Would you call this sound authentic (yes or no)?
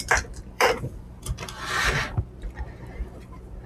no